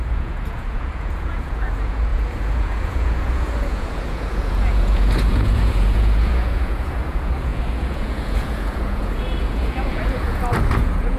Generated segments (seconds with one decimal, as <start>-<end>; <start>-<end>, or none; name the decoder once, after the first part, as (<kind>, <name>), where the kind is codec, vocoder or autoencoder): 0.0-11.2 (vocoder, Vocos)